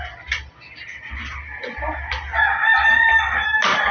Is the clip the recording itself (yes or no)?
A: yes